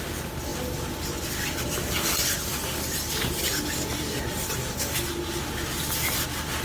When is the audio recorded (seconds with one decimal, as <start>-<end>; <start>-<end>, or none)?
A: 0.0-6.6